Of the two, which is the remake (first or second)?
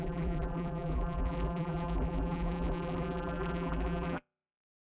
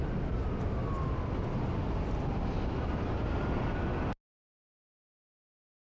first